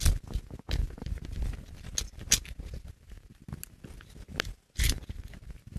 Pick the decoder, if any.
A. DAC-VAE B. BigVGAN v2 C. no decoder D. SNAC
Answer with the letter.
C